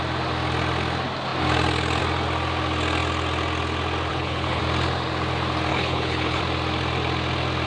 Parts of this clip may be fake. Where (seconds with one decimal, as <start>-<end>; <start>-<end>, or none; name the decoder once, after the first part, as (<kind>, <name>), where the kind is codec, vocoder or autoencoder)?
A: 4.1-4.6 (codec, HILCodec); 5.7-6.4

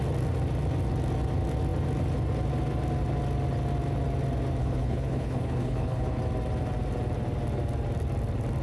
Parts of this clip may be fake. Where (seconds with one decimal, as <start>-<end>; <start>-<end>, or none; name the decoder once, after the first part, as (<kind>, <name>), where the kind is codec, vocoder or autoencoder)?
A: 4.6-6.2 (codec, HILCodec)

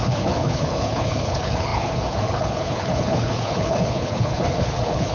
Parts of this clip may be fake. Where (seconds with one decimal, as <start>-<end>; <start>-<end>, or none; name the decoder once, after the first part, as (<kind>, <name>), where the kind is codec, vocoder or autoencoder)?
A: 0.0-5.1 (codec, HILCodec)

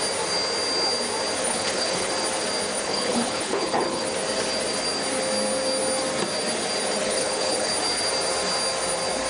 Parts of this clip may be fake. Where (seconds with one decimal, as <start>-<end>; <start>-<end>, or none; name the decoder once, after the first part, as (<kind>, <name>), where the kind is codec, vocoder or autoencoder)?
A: 1.4-2.1 (codec, HILCodec); 2.7-4.0; 7.0-7.7

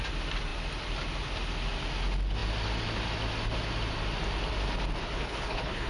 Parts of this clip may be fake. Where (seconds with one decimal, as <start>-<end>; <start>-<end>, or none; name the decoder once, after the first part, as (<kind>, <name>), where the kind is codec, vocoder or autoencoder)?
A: 5.0-5.9 (codec, HILCodec)

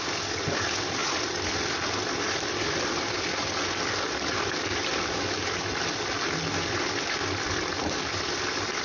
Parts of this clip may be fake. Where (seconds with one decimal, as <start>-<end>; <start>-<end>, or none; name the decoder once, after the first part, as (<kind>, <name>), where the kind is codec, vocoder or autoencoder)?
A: none

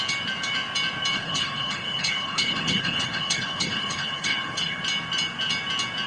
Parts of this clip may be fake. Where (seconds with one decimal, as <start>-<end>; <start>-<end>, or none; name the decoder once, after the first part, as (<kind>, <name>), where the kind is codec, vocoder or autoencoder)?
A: 1.1-4.8 (codec, HILCodec)

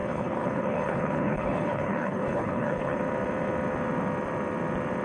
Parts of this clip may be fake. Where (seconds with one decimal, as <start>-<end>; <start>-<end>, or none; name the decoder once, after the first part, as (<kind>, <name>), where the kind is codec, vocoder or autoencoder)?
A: 0.0-3.0 (codec, HILCodec)